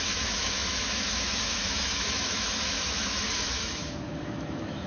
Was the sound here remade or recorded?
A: remade